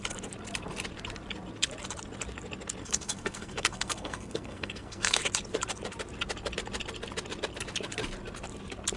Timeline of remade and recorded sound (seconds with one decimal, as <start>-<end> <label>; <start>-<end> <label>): 0.0-2.8 recorded; 2.8-5.2 remade; 5.2-9.0 recorded

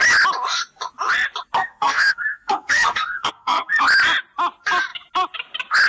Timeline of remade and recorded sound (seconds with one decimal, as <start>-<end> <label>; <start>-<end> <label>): 0.0-1.6 recorded; 1.6-3.8 remade; 3.8-5.9 recorded

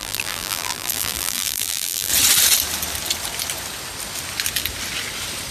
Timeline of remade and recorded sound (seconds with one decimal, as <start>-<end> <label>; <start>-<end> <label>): 0.0-2.1 remade; 2.1-5.5 recorded

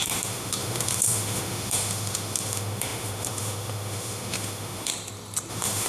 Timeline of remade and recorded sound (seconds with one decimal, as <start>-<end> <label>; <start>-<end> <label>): 0.0-4.9 remade; 4.9-5.5 recorded; 5.5-5.9 remade

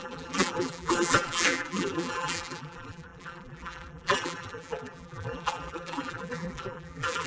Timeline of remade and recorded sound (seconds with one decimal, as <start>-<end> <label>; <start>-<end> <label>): 0.0-7.3 remade

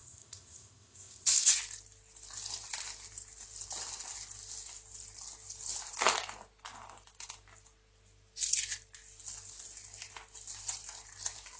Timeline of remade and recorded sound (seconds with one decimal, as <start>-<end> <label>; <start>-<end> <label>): 0.0-1.5 remade; 1.5-11.6 recorded